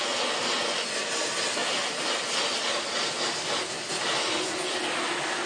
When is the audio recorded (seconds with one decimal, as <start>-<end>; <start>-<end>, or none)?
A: 0.0-5.5